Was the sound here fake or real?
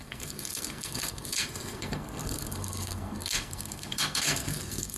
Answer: fake